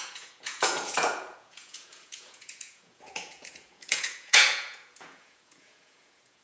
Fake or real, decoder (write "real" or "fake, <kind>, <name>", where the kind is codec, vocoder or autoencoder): fake, vocoder, Vocos